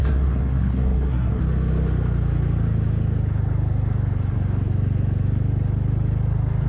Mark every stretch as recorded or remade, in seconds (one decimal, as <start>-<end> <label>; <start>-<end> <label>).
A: 0.0-1.4 remade; 1.4-6.7 recorded